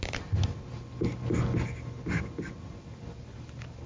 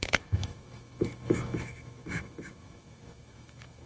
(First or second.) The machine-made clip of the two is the second